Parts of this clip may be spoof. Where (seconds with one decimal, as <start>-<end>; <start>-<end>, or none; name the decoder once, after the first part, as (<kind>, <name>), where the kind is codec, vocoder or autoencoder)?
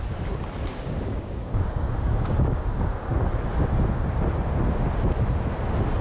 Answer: 0.7-3.2 (codec, DAC)